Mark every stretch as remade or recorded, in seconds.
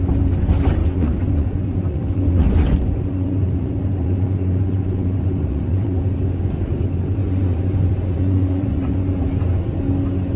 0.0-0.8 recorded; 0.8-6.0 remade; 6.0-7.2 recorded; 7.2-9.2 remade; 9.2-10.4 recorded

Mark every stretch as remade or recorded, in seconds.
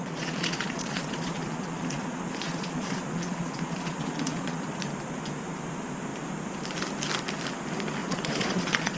0.0-4.8 remade; 4.8-8.0 recorded; 8.0-9.0 remade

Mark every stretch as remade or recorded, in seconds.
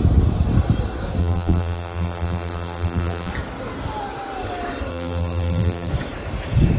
0.0-1.2 recorded; 1.2-3.3 remade; 3.3-4.9 recorded; 4.9-5.9 remade; 5.9-6.8 recorded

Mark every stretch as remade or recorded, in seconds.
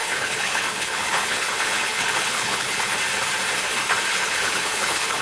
0.0-2.9 remade; 2.9-4.1 recorded; 4.1-5.2 remade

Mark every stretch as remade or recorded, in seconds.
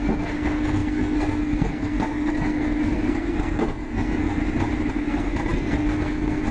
0.0-4.4 remade; 4.4-4.9 recorded; 4.9-6.5 remade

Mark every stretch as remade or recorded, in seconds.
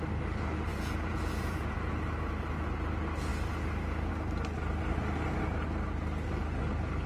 0.0-0.7 recorded; 0.7-1.9 remade; 1.9-7.1 recorded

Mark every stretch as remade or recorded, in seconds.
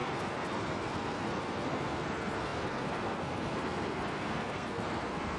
0.0-5.4 remade